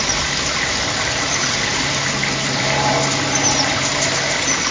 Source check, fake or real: fake